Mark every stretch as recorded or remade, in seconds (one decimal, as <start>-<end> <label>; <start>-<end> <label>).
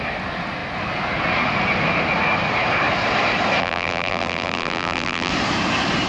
0.0-3.6 recorded; 3.6-5.3 remade; 5.3-6.1 recorded